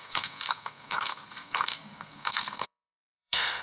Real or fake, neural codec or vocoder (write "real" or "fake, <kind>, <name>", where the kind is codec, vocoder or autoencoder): fake, codec, SNAC